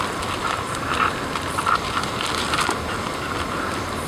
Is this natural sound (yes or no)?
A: yes